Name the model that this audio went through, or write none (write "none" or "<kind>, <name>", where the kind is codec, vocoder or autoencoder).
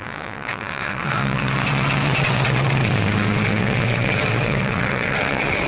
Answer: vocoder, WaveNeXt